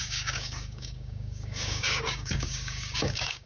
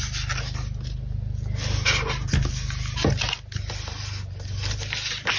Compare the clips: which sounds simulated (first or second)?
first